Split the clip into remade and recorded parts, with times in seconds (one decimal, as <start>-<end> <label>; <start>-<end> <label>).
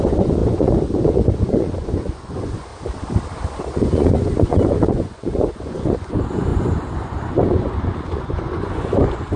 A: 0.0-2.7 remade; 2.7-3.6 recorded; 3.6-9.4 remade